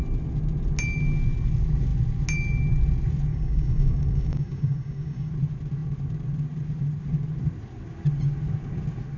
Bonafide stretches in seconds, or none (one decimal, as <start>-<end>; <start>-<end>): 0.0-3.3; 5.3-9.2